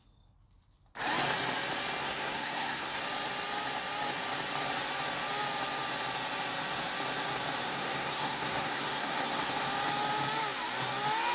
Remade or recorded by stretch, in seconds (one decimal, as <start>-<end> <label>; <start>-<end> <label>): 0.0-2.0 recorded; 2.0-3.0 remade; 3.0-7.7 recorded; 7.7-9.5 remade; 9.5-11.3 recorded